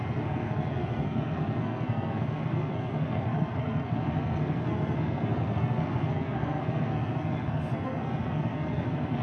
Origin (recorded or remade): remade